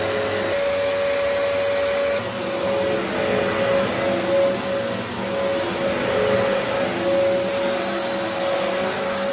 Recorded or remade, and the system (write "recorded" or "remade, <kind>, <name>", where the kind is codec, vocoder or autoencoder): recorded